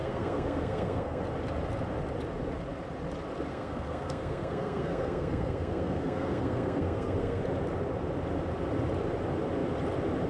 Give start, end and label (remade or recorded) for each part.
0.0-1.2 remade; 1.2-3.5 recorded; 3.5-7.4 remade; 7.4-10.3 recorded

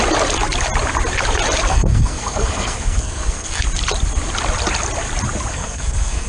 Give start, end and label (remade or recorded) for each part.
0.0-1.7 recorded; 1.7-3.6 remade; 3.6-5.5 recorded; 5.5-6.3 remade

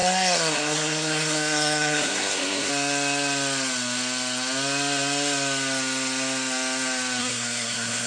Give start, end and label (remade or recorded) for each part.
0.0-2.7 remade; 2.7-7.2 recorded; 7.2-8.1 remade

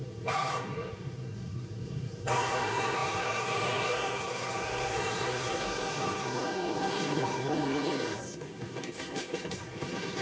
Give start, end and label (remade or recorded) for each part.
0.0-10.2 remade

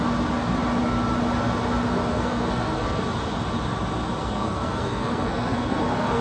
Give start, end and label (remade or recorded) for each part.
0.0-2.1 recorded; 2.1-3.0 remade; 3.0-4.2 recorded; 4.2-6.2 remade